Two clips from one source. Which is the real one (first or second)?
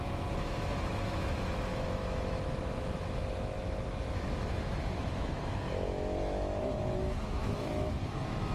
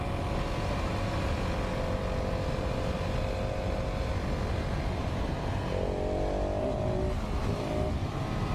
second